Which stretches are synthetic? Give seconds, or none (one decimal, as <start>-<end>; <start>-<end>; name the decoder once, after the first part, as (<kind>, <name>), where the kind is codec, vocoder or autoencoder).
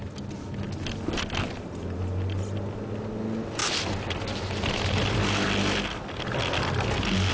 none